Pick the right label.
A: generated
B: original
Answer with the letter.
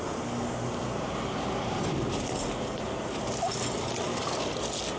B